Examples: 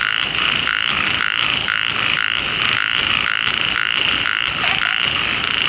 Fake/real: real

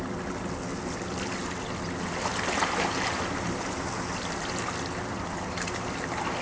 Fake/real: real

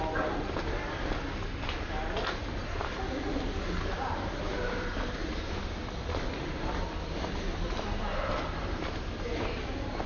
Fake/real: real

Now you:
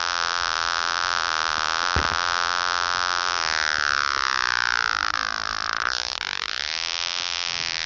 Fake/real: real